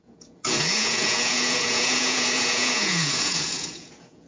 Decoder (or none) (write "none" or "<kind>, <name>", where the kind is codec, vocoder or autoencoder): vocoder, Vocos